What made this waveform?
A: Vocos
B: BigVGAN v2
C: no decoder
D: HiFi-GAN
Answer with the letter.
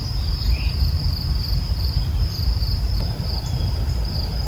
B